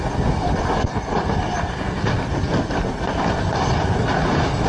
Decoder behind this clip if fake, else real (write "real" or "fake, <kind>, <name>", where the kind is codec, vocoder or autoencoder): real